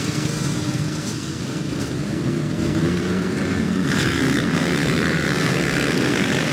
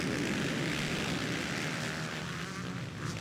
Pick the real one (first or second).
second